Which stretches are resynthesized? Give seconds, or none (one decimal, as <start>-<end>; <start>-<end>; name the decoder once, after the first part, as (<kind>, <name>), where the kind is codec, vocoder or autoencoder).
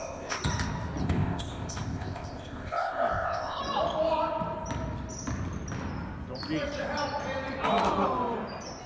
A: 0.0-0.4 (codec, ZipCodec); 1.0-3.6